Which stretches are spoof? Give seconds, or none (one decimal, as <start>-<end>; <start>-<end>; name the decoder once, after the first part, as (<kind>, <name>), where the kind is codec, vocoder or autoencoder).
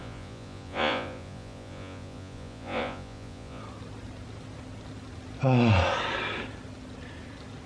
0.0-3.6 (vocoder, Vocos)